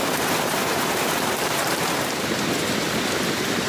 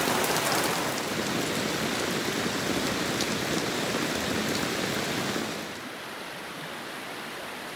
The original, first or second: second